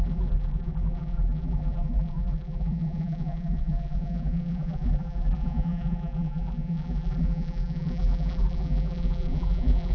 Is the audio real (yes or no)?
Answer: no